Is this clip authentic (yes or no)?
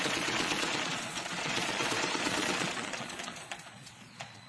no